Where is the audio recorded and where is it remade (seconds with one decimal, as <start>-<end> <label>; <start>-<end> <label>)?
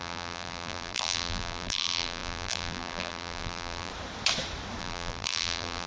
0.0-3.9 remade; 3.9-4.8 recorded; 4.8-5.9 remade